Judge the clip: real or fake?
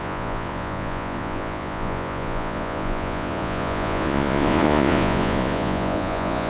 fake